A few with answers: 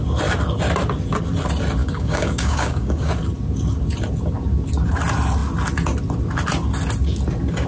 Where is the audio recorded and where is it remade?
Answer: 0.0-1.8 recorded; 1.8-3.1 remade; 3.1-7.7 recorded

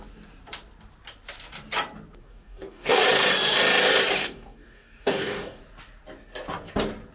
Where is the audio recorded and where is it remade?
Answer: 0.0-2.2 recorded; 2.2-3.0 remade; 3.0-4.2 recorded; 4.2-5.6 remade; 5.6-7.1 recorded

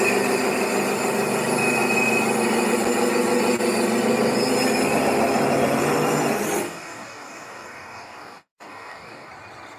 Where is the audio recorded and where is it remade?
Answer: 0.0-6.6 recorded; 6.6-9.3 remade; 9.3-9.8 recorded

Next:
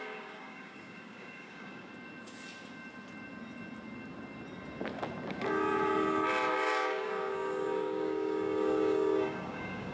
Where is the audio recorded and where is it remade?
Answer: 0.0-1.9 remade; 1.9-6.5 recorded; 6.5-9.9 remade

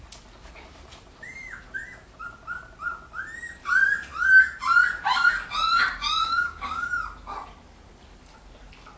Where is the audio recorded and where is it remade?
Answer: 0.0-6.2 recorded; 6.2-6.9 remade; 6.9-9.0 recorded